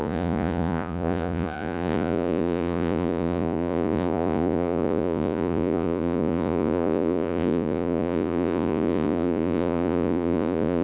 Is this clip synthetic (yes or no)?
yes